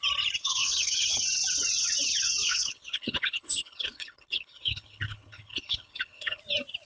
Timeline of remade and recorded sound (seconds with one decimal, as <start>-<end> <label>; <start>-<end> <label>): 0.0-0.4 recorded; 0.4-1.2 remade; 1.2-2.4 recorded; 2.4-6.4 remade; 6.4-6.9 recorded